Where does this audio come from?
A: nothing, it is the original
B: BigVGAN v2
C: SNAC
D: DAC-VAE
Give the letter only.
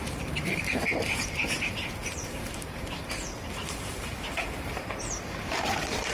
B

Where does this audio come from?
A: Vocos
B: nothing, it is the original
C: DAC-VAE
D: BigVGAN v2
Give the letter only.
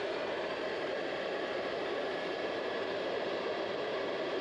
D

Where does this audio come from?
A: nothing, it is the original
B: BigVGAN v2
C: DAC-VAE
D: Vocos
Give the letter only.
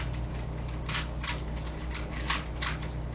A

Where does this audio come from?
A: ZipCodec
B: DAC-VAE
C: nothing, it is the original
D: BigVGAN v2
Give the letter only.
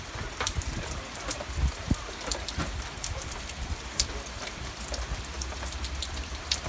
D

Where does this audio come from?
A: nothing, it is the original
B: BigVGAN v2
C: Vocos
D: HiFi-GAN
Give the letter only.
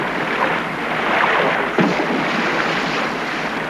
A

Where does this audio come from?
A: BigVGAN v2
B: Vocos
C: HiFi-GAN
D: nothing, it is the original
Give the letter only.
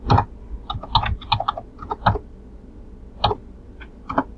D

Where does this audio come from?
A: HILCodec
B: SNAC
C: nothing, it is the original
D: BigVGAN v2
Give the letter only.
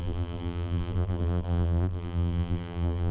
D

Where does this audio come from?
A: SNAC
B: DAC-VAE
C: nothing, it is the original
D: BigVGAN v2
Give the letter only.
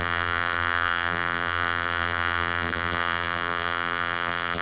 D